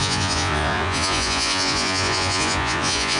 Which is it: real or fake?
fake